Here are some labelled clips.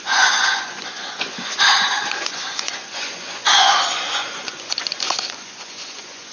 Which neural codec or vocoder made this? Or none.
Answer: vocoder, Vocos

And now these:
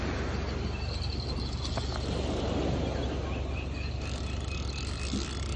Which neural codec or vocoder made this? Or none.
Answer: none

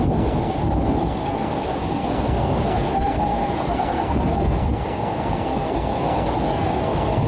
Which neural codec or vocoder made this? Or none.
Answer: codec, SNAC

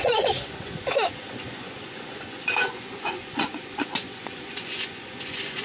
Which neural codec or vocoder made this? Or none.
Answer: vocoder, Vocos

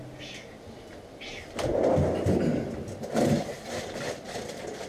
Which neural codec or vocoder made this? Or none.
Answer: none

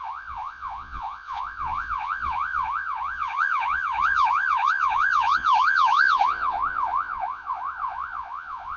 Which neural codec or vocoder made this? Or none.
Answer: vocoder, Vocos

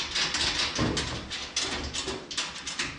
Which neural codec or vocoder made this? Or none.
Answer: none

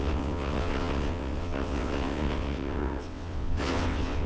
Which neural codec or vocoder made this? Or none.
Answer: vocoder, WaveNeXt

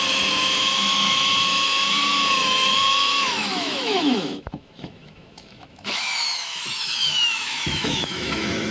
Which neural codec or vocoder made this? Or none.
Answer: autoencoder, DAC-VAE